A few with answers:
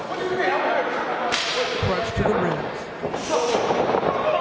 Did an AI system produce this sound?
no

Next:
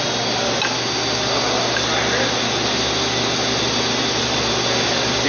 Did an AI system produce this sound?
no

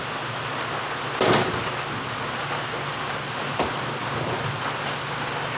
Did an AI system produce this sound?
no